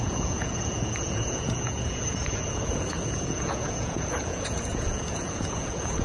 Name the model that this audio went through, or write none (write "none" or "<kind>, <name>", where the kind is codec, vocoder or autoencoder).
vocoder, Vocos